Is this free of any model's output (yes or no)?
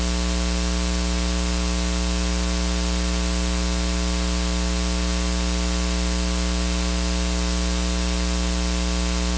yes